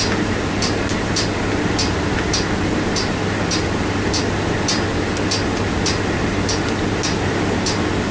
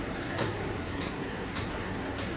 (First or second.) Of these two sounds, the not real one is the second